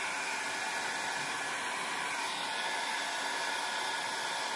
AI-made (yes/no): no